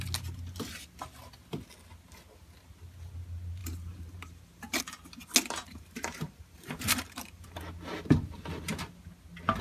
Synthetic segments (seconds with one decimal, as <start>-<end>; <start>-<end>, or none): 3.6-4.8; 5.6-7.6